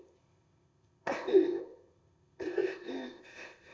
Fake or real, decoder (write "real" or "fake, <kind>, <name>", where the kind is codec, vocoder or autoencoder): fake, codec, ZipCodec